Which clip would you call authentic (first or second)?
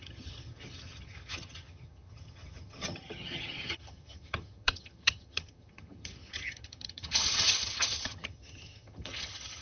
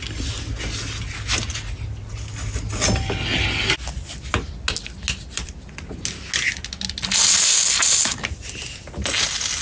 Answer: second